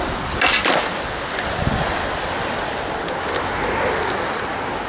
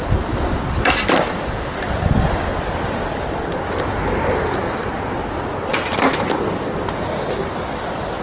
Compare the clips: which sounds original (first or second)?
first